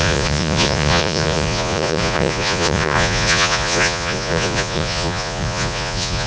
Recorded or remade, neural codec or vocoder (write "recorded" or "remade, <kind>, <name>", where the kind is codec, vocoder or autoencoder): remade, vocoder, Vocos